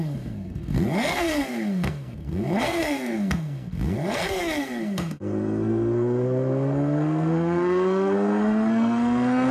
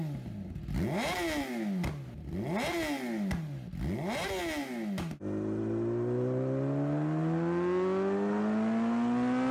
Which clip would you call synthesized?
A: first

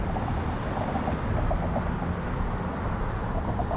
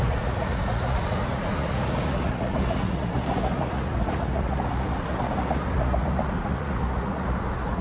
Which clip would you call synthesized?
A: second